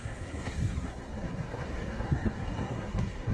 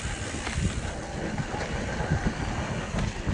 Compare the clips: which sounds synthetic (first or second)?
first